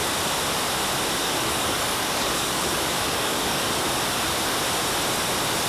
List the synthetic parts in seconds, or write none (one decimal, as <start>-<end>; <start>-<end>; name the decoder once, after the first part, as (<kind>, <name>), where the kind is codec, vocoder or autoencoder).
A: 1.2-3.7 (codec, DAC)